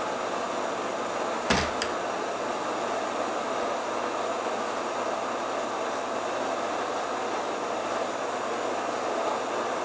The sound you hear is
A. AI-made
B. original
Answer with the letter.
B